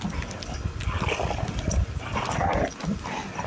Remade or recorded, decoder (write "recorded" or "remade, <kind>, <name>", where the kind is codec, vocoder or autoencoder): recorded